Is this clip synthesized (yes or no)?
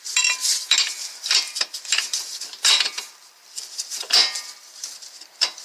yes